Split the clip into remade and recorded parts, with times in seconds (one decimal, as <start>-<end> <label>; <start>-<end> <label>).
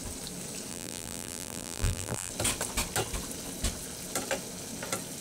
0.0-0.7 recorded; 0.7-2.3 remade; 2.3-5.2 recorded